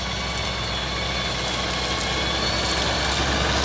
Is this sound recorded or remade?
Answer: recorded